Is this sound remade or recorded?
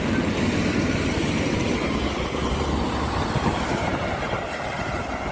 remade